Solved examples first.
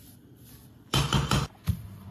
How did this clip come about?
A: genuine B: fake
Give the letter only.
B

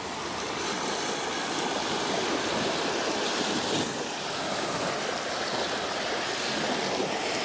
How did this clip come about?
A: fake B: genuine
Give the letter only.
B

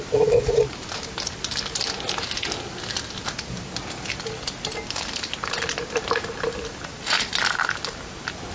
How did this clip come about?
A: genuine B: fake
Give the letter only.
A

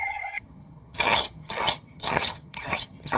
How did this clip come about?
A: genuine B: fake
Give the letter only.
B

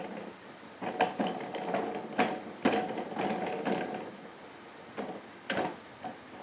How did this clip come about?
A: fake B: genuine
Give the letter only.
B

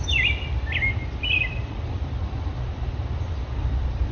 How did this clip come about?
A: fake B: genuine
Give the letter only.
A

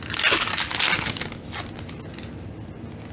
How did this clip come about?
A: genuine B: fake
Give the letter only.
A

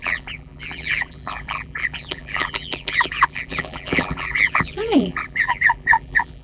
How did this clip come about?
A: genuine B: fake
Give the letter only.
B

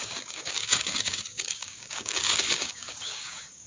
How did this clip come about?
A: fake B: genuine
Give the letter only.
A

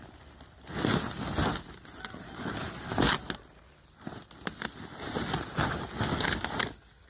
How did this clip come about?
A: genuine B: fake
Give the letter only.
A